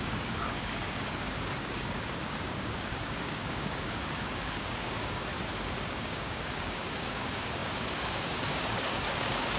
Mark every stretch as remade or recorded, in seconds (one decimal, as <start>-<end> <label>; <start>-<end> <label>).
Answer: 0.0-5.3 remade; 5.3-5.9 recorded; 5.9-9.6 remade